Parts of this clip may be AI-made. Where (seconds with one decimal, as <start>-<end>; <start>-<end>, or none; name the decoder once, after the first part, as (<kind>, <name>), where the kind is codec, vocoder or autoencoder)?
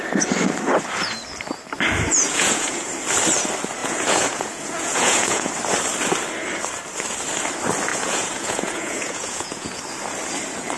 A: 2.1-2.9 (vocoder, Vocos); 3.8-5.5; 7.9-9.8